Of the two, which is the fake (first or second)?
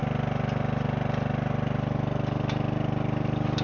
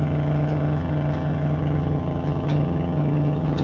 second